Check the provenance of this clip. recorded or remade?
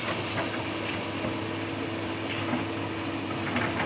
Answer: recorded